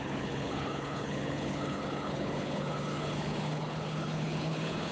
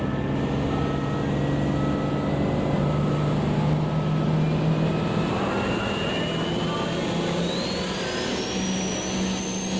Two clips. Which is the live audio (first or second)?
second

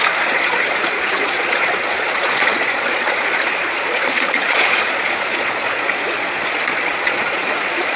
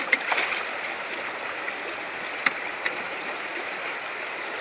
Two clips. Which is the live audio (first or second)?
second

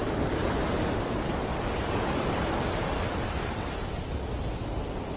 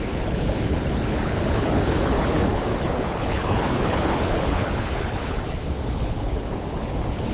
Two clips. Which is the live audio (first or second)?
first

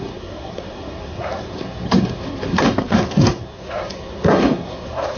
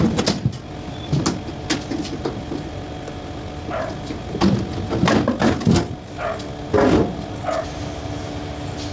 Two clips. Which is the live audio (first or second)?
second